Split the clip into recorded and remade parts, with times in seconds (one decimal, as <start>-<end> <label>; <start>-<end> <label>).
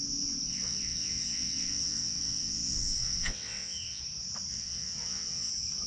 0.0-0.5 recorded; 0.5-4.0 remade; 4.0-4.5 recorded; 4.5-5.5 remade; 5.5-5.9 recorded